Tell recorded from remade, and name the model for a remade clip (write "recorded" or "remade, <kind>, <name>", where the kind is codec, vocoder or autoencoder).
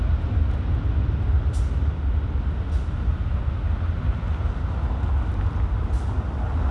recorded